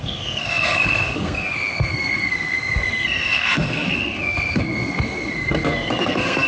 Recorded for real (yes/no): no